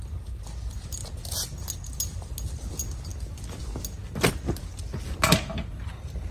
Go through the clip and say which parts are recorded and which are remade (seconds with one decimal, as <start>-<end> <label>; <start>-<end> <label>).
0.0-6.3 recorded